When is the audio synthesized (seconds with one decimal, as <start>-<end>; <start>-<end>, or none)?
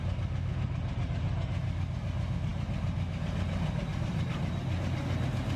none